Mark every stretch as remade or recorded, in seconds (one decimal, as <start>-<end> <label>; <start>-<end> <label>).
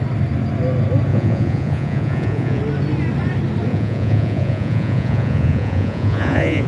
0.0-1.1 recorded; 1.1-2.6 remade; 2.6-3.7 recorded; 3.7-6.7 remade